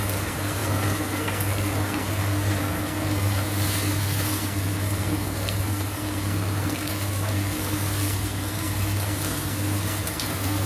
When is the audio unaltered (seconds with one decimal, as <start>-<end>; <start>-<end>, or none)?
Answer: none

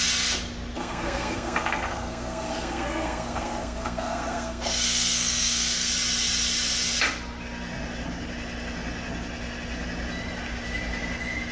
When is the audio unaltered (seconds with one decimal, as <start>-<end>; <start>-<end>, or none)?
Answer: 0.0-0.7; 5.9-11.5

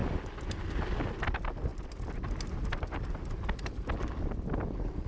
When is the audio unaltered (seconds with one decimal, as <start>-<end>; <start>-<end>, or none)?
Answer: 0.0-5.1

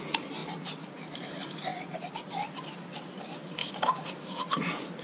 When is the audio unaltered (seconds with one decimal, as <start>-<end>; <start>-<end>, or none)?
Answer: 0.0-3.6; 4.4-5.0

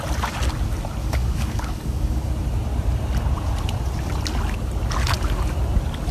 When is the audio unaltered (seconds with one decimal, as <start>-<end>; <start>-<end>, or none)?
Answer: 0.0-1.0; 2.3-6.1

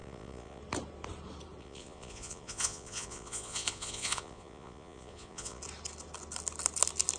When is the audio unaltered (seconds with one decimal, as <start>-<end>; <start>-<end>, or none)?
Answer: 0.6-1.6; 5.6-7.2